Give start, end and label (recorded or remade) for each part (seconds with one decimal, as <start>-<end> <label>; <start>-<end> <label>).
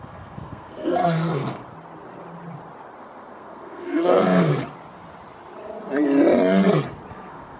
0.0-1.6 remade; 1.6-3.3 recorded; 3.3-4.5 remade; 4.5-7.1 recorded; 7.1-7.6 remade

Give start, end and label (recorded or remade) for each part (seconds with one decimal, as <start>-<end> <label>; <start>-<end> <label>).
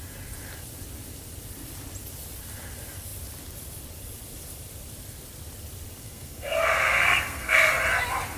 0.0-6.0 recorded; 6.0-7.7 remade; 7.7-8.4 recorded